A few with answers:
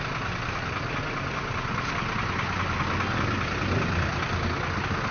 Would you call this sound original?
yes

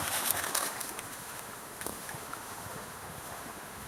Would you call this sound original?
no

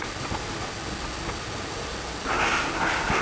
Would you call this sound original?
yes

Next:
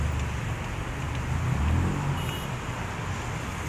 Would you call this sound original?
yes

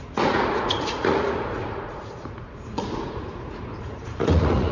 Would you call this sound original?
no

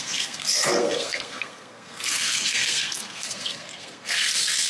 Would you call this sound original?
no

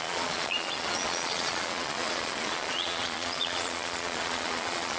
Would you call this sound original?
no